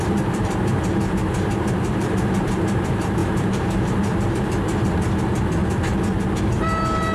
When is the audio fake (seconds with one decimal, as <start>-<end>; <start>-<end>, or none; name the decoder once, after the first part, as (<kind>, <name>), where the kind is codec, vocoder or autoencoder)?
0.0-5.6 (vocoder, BigVGAN v2); 6.4-7.1

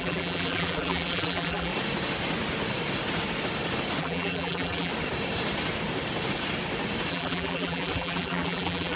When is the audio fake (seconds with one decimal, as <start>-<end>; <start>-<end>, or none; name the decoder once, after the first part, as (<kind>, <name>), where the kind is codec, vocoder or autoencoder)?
0.0-1.7 (vocoder, BigVGAN v2); 4.0-4.9; 7.1-9.0

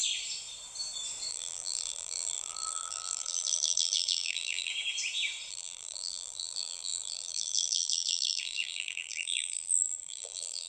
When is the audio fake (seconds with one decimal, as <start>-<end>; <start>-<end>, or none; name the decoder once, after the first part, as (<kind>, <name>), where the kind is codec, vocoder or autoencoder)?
1.3-4.7 (vocoder, BigVGAN v2); 5.5-10.7